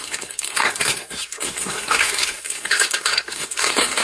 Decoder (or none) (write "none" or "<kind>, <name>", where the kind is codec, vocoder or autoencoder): codec, SNAC